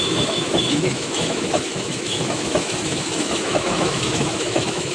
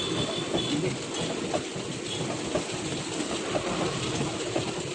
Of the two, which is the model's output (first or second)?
first